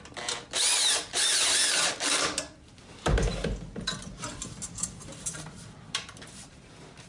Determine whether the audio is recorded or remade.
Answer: remade